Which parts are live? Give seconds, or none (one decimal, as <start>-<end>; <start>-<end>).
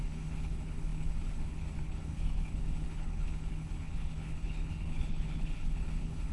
none